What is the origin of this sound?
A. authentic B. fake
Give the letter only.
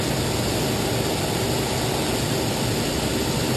A